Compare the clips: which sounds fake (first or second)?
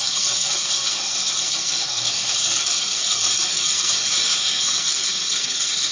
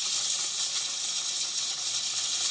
first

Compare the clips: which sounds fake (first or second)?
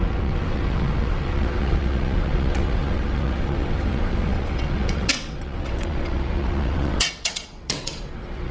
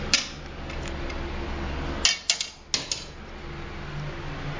first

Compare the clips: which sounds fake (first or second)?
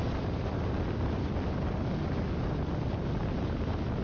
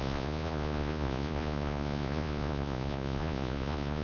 second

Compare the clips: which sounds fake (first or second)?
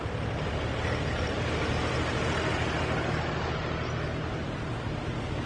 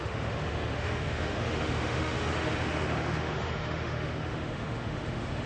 second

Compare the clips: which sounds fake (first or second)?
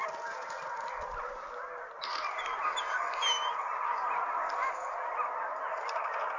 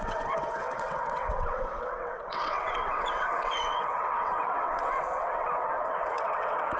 second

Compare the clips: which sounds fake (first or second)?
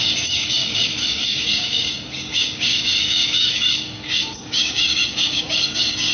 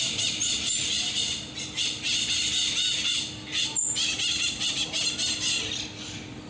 first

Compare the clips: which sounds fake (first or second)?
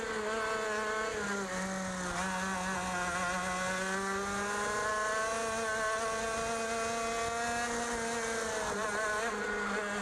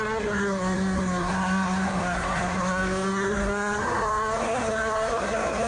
second